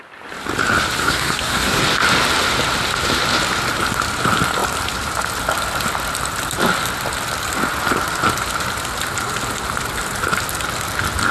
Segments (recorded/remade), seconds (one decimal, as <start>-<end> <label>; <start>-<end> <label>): 0.0-1.0 recorded; 1.0-1.8 remade; 1.8-11.3 recorded